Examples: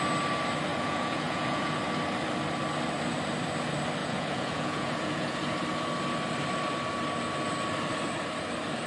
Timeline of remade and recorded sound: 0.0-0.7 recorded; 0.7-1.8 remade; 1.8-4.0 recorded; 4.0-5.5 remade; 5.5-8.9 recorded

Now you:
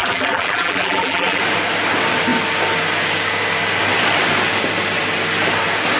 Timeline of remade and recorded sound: 0.0-1.4 remade; 1.4-6.0 recorded

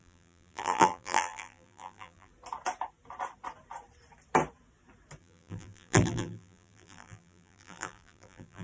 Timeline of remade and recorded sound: 0.0-2.3 remade; 2.3-5.2 recorded; 5.2-8.6 remade